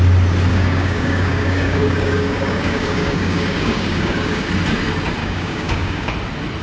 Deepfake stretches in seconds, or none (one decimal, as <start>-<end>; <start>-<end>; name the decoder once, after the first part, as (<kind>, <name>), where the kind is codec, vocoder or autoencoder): 0.5-4.5 (codec, DAC); 5.2-6.1